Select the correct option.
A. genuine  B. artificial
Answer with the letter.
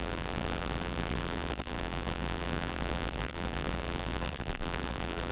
B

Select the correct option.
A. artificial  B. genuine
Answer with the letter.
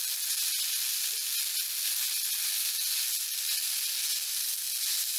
B